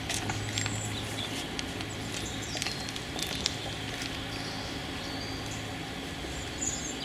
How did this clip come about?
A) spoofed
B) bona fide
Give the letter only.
B